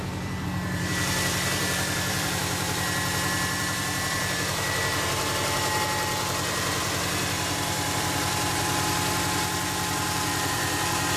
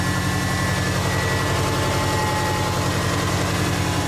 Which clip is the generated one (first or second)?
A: first